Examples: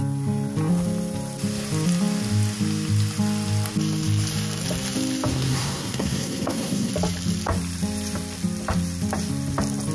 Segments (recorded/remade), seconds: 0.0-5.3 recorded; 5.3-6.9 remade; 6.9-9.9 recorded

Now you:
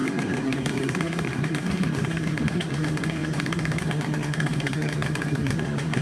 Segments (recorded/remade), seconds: 0.0-6.0 remade